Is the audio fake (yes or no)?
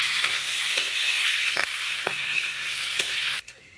yes